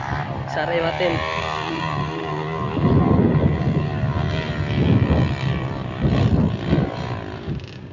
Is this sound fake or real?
real